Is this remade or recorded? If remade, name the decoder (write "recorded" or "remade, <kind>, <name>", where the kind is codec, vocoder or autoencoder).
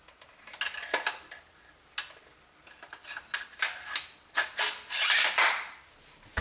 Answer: recorded